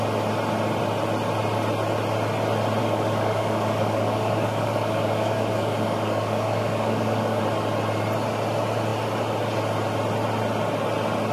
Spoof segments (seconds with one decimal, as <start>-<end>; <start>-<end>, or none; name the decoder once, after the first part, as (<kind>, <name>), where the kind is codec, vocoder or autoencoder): 2.8-7.4 (codec, DAC)